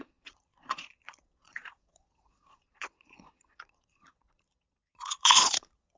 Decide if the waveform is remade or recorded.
remade